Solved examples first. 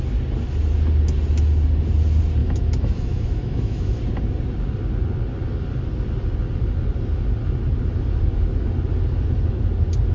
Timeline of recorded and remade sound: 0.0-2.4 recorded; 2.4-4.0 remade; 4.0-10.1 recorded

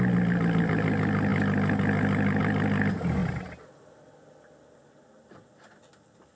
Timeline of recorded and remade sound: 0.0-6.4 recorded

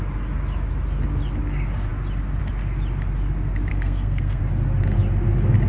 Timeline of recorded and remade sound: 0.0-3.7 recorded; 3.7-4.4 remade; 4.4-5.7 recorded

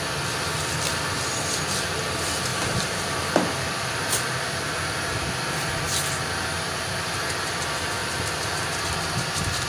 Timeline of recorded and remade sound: 0.0-2.5 recorded; 2.5-5.3 remade; 5.3-8.0 recorded; 8.0-8.8 remade; 8.8-9.7 recorded